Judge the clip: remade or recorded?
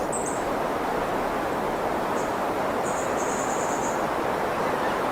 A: recorded